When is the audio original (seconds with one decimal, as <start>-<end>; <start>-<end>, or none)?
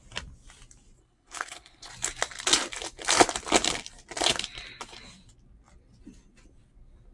0.0-1.0; 1.9-7.1